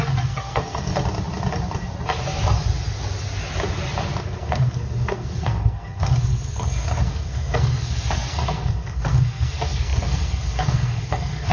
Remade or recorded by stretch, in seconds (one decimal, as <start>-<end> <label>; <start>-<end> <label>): 0.0-0.9 remade; 0.9-4.2 recorded; 4.2-11.5 remade